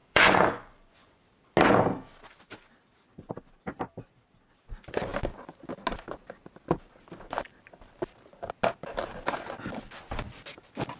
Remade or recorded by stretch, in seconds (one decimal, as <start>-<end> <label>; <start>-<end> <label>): 0.0-1.2 remade; 1.2-11.0 recorded